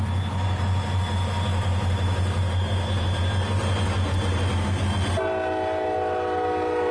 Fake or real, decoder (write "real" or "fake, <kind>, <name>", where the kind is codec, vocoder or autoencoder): real